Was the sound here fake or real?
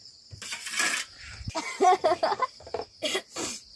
fake